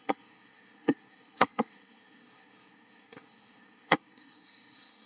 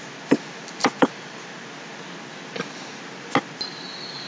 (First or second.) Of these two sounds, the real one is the second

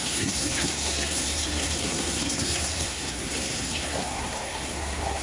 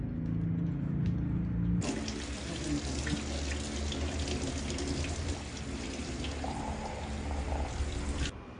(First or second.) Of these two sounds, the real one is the second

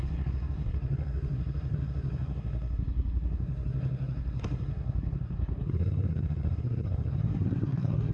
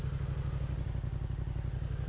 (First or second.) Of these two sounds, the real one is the second